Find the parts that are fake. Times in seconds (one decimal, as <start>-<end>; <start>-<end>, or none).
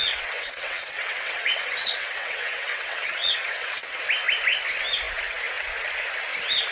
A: 0.0-4.0